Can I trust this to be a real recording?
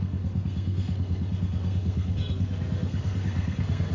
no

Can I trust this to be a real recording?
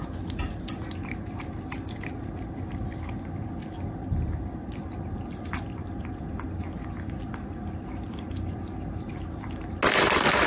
yes